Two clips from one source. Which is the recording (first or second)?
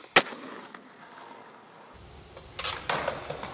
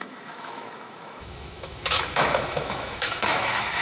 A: first